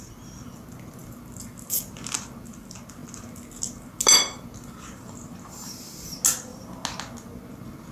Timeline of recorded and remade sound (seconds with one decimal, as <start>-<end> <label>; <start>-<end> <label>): 0.0-7.9 recorded